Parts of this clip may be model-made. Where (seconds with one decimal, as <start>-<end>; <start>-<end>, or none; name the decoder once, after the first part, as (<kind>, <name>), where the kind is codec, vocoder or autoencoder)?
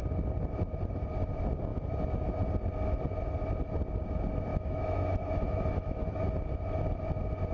1.7-2.4 (autoencoder, DAC-VAE); 4.5-6.3